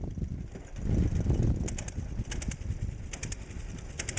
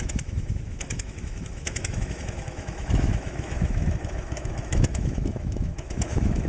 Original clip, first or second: first